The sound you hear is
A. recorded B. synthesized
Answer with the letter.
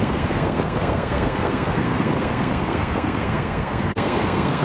B